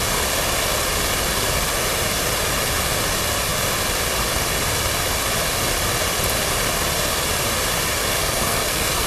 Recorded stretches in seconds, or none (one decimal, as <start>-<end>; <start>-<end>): 0.0-8.2